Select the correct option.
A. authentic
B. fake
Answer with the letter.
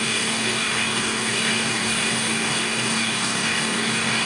B